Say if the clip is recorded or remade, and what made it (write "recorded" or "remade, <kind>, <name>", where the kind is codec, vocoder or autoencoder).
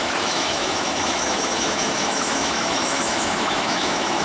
remade, autoencoder, DAC-VAE